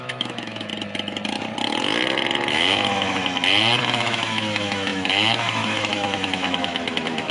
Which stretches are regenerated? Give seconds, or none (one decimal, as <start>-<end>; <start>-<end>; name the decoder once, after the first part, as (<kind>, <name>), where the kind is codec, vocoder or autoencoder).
0.0-0.7 (autoencoder, DAC-VAE); 2.5-3.2; 3.8-7.3